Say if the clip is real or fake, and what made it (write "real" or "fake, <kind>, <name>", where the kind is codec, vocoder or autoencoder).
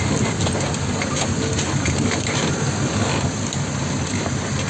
real